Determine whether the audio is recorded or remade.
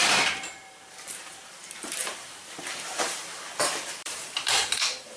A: remade